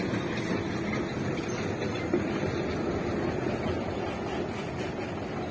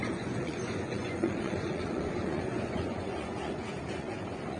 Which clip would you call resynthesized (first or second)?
second